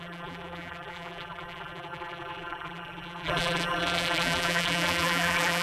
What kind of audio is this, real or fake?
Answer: fake